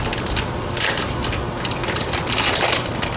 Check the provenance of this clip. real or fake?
real